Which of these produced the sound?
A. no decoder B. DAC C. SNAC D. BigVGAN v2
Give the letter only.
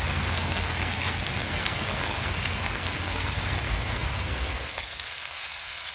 C